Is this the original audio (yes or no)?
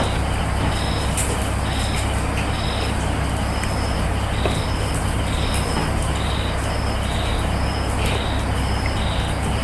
yes